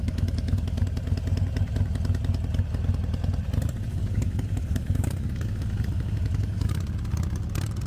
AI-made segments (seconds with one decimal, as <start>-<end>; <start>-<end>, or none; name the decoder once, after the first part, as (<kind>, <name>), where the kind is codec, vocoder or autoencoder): 0.0-0.8 (codec, DAC); 3.9-6.7